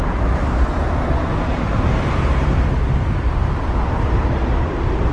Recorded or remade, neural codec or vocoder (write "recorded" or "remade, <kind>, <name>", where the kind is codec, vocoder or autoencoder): remade, vocoder, BigVGAN v2